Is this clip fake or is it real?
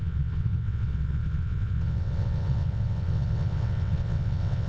fake